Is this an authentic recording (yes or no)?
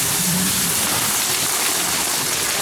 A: yes